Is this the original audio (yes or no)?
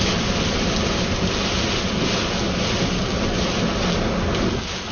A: yes